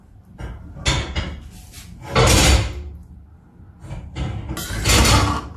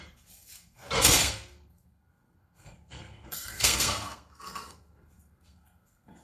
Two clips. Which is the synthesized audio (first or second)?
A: second